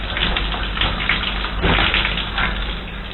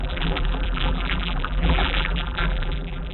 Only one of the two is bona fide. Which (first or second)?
first